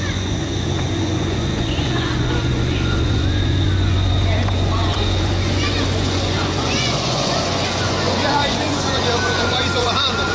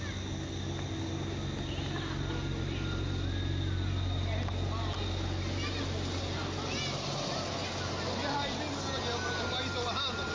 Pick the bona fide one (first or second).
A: second